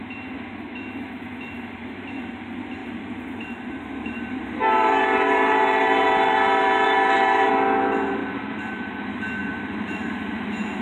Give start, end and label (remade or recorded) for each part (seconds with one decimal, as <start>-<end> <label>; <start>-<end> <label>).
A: 0.0-2.8 recorded; 2.8-7.5 remade; 7.5-8.2 recorded; 8.2-9.0 remade; 9.0-9.4 recorded; 9.4-10.1 remade; 10.1-10.8 recorded

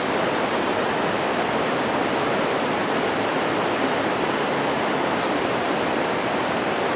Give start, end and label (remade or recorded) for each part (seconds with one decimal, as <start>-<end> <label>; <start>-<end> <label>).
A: 0.0-7.0 recorded

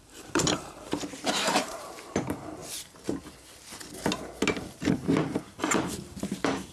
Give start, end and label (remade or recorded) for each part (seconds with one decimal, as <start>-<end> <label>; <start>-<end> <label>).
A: 0.0-2.6 remade; 2.6-4.7 recorded; 4.7-6.7 remade

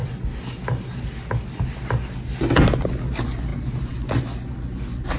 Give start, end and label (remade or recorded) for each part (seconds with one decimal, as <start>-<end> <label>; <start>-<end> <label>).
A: 0.0-5.2 recorded